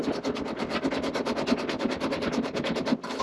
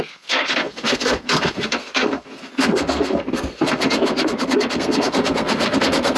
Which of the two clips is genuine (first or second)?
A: first